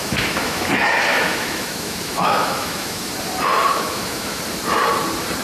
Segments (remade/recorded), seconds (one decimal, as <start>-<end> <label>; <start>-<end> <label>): 0.0-0.7 remade; 0.7-1.1 recorded; 1.1-3.1 remade; 3.1-3.7 recorded; 3.7-4.4 remade; 4.4-5.4 recorded